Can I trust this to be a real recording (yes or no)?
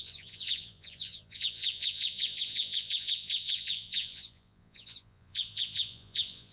no